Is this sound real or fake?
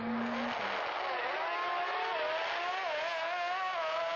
real